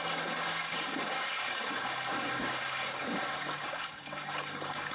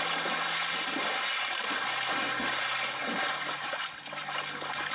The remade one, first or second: first